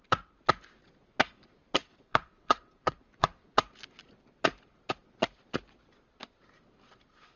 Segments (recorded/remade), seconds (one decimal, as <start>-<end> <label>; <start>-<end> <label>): 0.0-1.8 recorded; 1.8-3.5 remade; 3.5-7.4 recorded